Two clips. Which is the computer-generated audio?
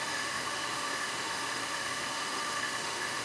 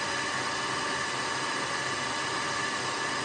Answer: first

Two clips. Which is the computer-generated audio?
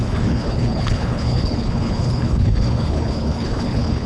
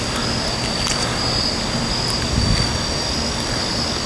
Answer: first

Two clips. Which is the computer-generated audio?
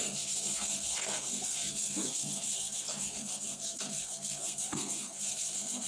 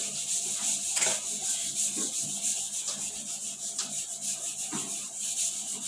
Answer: first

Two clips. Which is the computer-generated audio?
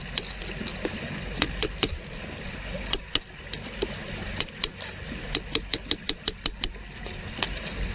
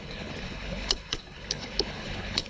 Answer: second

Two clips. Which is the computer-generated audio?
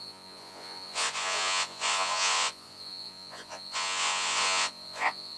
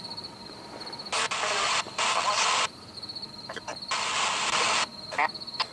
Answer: first